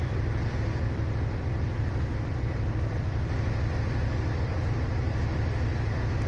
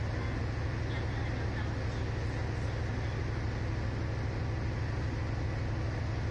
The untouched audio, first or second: second